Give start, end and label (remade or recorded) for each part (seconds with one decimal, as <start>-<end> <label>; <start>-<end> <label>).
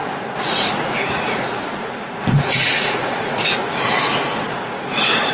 0.0-3.6 remade; 3.6-4.4 recorded; 4.4-5.3 remade